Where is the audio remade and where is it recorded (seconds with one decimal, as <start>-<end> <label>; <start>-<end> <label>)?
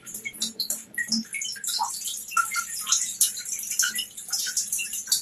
0.0-1.3 remade; 1.3-1.9 recorded; 1.9-3.1 remade; 3.1-3.9 recorded; 3.9-5.2 remade